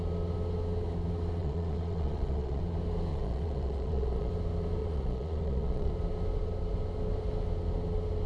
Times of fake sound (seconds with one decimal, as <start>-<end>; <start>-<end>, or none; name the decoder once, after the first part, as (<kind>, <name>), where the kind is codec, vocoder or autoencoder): 1.4-2.6 (vocoder, Vocos); 3.1-4.3; 4.8-5.9